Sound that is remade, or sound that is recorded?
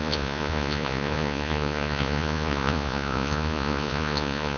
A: remade